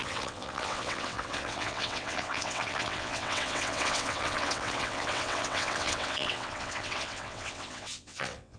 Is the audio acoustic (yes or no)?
no